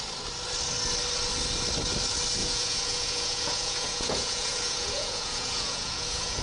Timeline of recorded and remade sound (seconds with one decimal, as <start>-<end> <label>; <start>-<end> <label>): 0.0-2.4 recorded; 2.4-6.4 remade